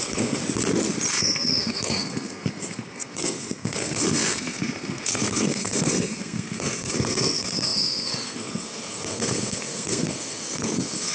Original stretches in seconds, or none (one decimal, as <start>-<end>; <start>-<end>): 0.4-1.1